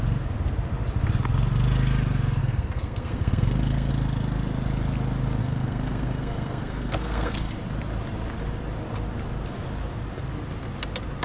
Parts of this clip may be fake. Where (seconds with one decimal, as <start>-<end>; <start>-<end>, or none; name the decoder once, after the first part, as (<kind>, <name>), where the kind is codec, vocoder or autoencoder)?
2.4-3.9 (codec, SNAC); 5.4-7.5